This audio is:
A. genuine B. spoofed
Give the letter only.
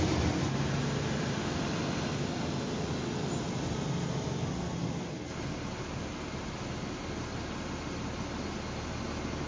A